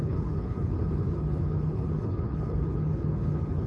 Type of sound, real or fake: fake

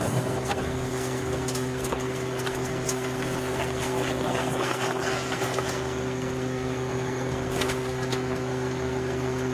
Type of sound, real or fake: fake